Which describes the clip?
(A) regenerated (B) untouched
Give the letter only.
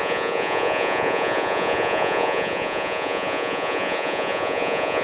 A